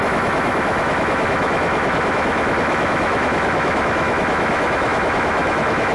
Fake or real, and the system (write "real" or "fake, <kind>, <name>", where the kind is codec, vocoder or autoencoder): fake, autoencoder, DAC-VAE